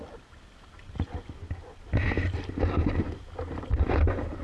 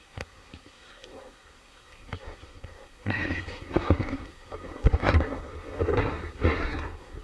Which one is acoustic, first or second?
first